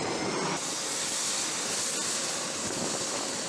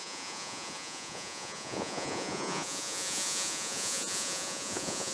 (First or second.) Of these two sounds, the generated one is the second